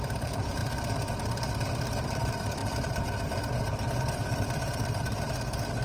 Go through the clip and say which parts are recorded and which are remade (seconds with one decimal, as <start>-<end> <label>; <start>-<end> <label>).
0.0-0.6 remade; 0.6-1.7 recorded; 1.7-5.8 remade